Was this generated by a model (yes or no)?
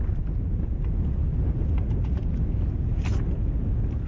no